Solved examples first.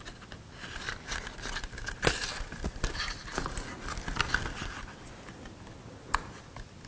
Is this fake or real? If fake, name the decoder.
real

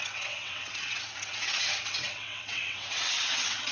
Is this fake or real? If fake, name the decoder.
fake, vocoder, WaveNeXt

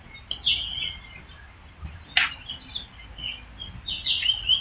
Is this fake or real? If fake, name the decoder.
real